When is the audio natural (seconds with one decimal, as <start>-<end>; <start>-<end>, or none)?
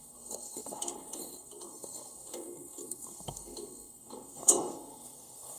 none